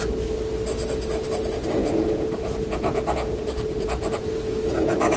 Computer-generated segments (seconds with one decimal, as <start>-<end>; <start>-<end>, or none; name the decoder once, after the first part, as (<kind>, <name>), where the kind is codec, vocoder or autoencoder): 1.8-5.2 (vocoder, Vocos)